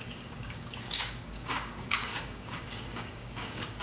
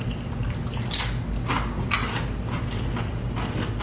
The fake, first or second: first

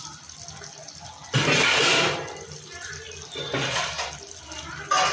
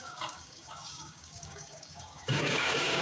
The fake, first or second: second